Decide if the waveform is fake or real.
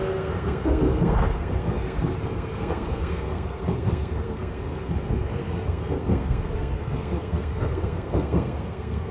fake